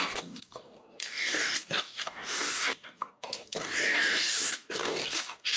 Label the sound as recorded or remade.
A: remade